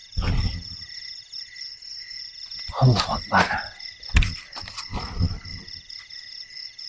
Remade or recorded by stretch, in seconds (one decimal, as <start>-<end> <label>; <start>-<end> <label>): 0.0-1.0 remade; 1.0-1.9 recorded; 1.9-6.0 remade; 6.0-6.9 recorded